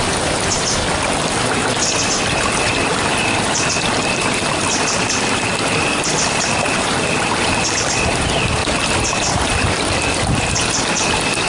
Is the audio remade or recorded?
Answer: recorded